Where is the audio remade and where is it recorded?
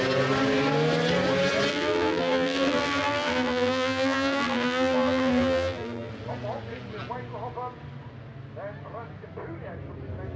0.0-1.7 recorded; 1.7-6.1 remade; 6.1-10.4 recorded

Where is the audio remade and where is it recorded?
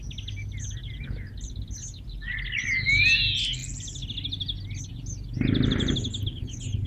0.0-6.9 recorded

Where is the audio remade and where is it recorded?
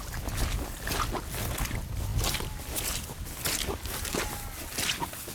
0.0-5.3 recorded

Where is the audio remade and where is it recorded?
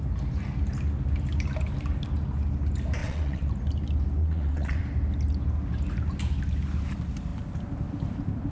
0.0-3.0 recorded; 3.0-3.5 remade; 3.5-4.2 recorded; 4.2-4.8 remade; 4.8-8.5 recorded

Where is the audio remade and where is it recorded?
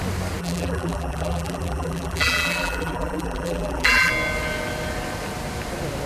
0.0-0.4 recorded; 0.4-4.1 remade; 4.1-6.1 recorded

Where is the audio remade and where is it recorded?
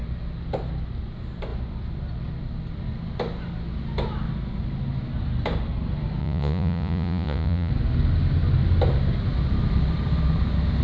0.0-6.2 recorded; 6.2-7.7 remade; 7.7-10.8 recorded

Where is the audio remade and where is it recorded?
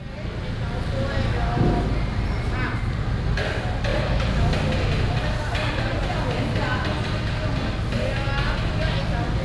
0.0-9.4 recorded